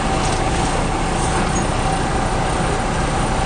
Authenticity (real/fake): real